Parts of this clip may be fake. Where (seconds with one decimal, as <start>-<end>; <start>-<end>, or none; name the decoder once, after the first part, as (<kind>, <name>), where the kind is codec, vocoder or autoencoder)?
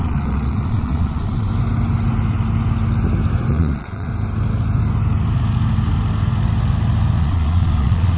0.0-1.5 (vocoder, Vocos); 3.5-4.1; 7.2-8.2